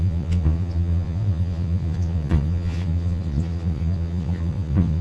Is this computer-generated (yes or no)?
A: yes